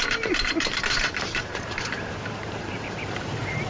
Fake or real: fake